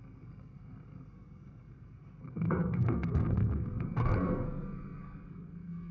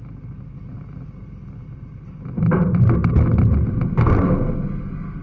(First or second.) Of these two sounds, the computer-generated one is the first